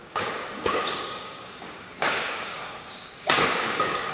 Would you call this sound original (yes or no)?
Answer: no